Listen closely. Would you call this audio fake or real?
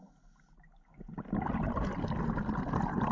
real